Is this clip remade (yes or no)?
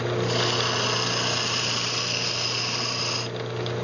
no